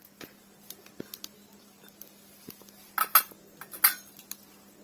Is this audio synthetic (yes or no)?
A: no